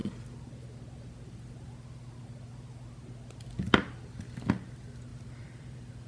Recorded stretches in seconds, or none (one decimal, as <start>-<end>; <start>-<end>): 0.0-5.1